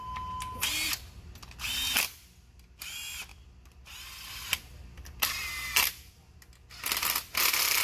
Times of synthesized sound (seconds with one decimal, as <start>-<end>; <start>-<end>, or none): none